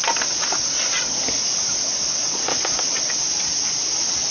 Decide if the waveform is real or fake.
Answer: real